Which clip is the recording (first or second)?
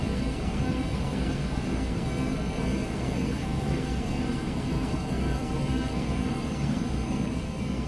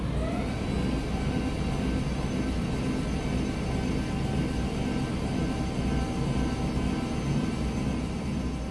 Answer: second